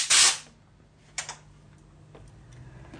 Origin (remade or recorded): recorded